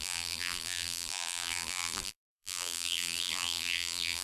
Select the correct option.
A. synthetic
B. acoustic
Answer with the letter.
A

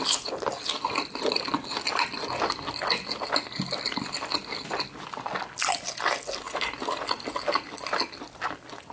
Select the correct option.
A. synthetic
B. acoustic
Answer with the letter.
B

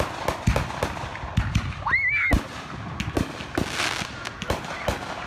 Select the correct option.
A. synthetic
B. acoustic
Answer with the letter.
B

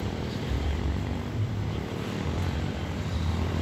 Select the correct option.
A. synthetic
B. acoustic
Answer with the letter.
A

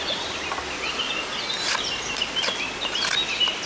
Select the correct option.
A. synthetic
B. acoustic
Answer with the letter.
B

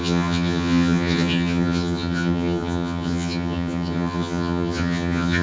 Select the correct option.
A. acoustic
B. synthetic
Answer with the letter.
B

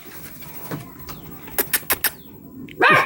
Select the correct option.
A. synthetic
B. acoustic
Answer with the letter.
B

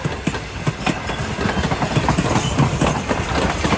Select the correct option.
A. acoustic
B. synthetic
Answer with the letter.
A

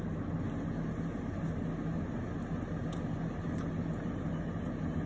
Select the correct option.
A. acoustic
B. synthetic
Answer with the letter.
A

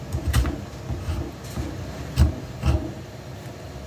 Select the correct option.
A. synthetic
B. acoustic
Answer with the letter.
B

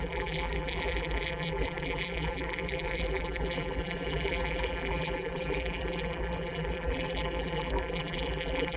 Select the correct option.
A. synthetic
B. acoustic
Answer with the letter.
A